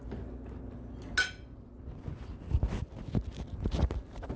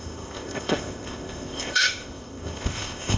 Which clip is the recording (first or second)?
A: first